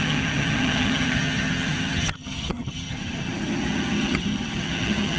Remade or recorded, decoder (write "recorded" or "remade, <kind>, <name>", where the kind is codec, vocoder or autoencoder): remade, vocoder, HiFi-GAN